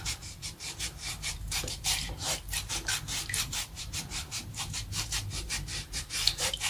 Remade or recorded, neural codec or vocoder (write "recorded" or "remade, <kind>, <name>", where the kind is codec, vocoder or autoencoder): remade, vocoder, BigVGAN v2